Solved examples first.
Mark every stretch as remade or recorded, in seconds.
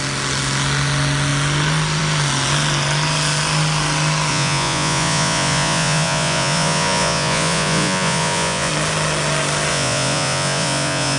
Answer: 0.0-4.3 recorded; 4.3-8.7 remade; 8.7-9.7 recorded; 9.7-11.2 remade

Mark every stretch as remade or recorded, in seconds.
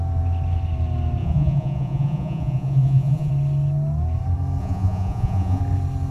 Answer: 0.0-1.2 recorded; 1.2-3.3 remade; 3.3-4.6 recorded; 4.6-5.6 remade; 5.6-6.1 recorded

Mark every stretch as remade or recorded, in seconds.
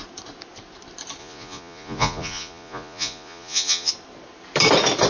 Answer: 0.0-1.2 recorded; 1.2-3.9 remade; 3.9-5.1 recorded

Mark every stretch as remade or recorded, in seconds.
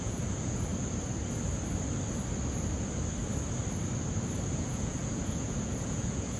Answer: 0.0-0.7 remade; 0.7-4.5 recorded; 4.5-6.4 remade